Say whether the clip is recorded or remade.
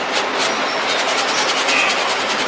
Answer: recorded